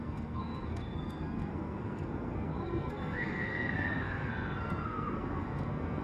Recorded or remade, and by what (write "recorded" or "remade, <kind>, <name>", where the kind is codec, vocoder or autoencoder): remade, codec, SNAC